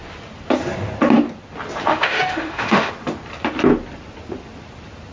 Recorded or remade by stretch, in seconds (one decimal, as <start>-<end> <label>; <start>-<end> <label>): 0.0-1.9 recorded; 1.9-2.9 remade; 2.9-5.1 recorded